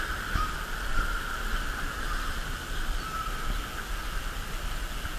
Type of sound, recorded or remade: recorded